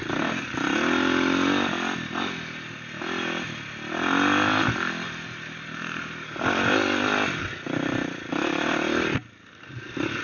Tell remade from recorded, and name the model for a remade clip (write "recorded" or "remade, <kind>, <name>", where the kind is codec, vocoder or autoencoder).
recorded